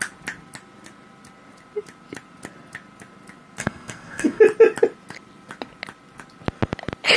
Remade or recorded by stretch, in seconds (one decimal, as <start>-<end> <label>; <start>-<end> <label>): 0.0-3.6 recorded; 3.6-4.4 remade; 4.4-7.2 recorded